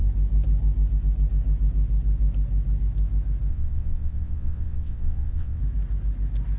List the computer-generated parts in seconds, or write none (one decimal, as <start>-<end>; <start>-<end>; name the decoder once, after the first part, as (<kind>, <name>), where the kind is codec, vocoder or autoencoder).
3.5-5.6 (vocoder, WaveNeXt)